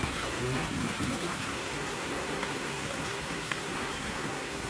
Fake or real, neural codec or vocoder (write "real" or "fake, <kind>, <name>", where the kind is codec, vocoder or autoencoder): fake, codec, SNAC